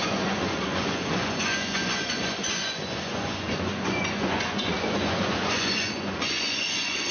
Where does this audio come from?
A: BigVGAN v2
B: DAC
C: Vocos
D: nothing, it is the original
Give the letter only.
C